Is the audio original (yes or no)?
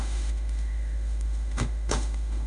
no